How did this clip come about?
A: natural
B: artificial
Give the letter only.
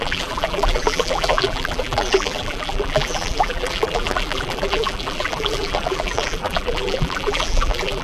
B